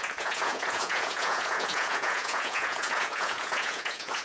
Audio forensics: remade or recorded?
remade